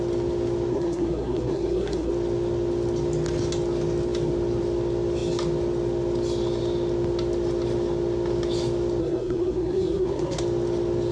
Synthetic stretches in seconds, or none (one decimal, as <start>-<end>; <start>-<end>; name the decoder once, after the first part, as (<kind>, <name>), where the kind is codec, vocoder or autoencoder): 0.7-2.1 (codec, SNAC); 9.0-10.4